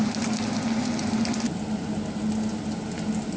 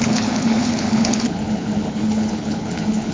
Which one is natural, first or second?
first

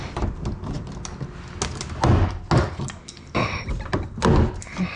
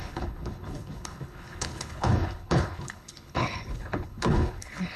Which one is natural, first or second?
first